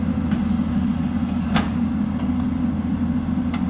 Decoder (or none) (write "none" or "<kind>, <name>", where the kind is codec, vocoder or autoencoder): none